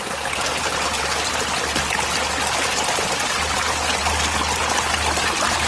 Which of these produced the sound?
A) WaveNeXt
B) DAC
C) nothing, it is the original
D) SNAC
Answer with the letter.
C